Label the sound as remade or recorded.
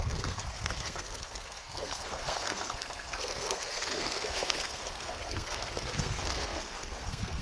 remade